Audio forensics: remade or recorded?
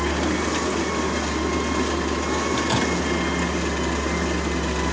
recorded